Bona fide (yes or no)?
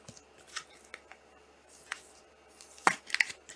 yes